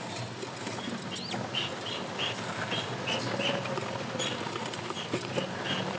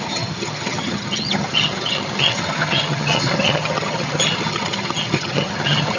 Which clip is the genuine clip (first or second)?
first